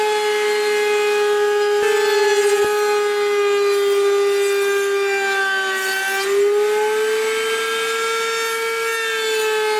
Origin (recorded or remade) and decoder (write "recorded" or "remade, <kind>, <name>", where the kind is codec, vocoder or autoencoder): recorded